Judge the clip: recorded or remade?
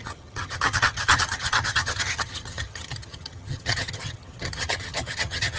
remade